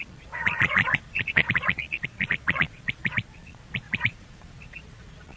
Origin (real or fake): fake